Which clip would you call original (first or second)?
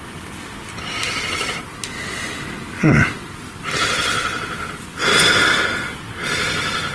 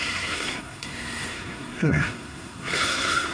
first